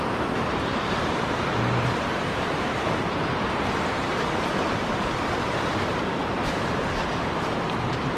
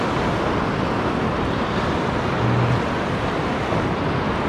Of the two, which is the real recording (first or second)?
second